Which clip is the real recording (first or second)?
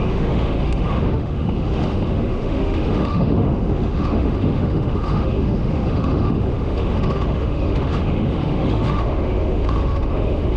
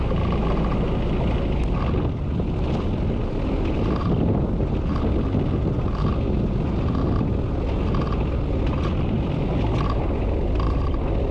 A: second